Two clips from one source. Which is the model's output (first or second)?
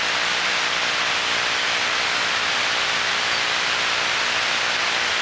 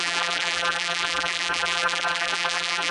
second